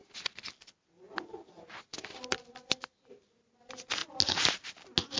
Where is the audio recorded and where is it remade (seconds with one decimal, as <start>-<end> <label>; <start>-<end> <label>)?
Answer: 0.0-5.2 recorded